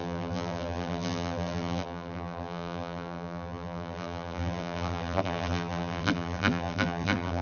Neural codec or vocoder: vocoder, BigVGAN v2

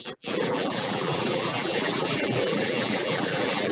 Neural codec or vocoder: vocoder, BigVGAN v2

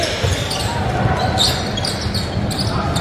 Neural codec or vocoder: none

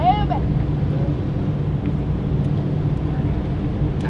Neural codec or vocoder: none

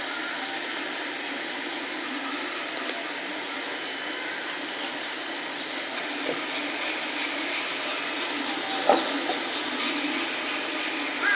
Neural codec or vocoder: none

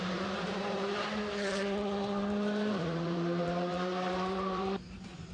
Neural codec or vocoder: vocoder, BigVGAN v2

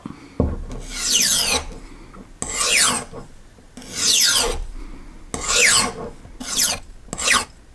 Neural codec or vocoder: none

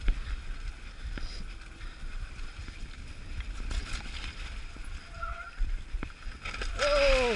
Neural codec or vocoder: none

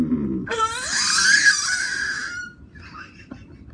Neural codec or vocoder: vocoder, BigVGAN v2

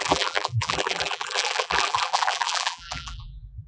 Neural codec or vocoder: vocoder, BigVGAN v2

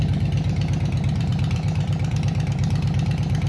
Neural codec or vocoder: vocoder, BigVGAN v2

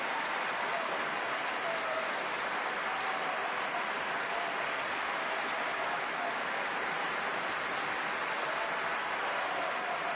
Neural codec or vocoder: vocoder, BigVGAN v2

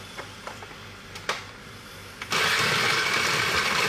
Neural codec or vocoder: vocoder, BigVGAN v2